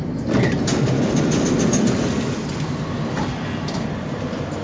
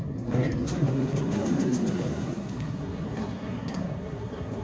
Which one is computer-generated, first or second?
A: second